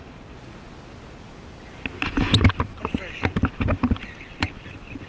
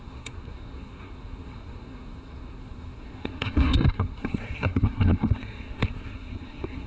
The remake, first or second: second